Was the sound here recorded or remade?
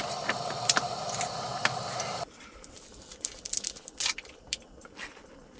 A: remade